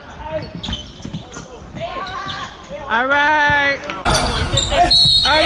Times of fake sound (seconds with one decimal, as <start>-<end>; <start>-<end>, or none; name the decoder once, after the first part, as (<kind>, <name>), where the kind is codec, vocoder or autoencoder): none